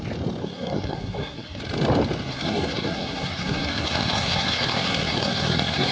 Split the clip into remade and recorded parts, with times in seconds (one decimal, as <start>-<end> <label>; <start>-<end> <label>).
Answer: 0.0-0.4 recorded; 0.4-1.6 remade; 1.6-2.3 recorded; 2.3-5.9 remade